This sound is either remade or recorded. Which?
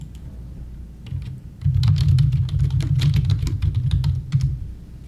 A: recorded